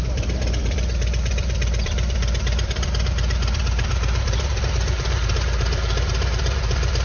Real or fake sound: fake